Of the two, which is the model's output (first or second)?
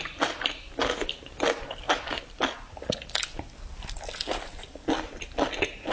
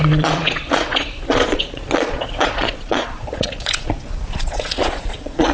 second